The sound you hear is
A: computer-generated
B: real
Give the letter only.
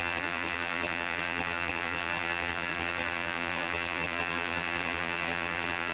A